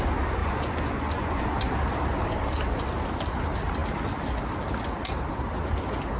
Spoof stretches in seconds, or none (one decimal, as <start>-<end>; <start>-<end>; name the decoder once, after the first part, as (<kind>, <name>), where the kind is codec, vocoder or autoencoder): 0.4-1.7 (vocoder, Vocos)